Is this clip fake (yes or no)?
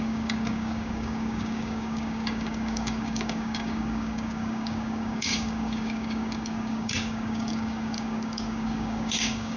yes